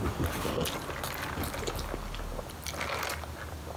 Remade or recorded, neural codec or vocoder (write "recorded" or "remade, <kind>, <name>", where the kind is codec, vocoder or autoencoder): recorded